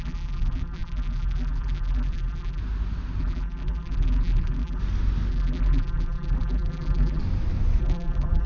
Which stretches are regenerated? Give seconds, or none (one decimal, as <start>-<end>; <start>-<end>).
0.0-2.6; 3.2-4.8; 5.3-7.2; 7.8-8.5